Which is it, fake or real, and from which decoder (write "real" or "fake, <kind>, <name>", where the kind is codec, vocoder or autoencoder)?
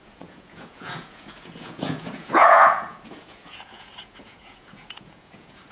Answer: fake, vocoder, Vocos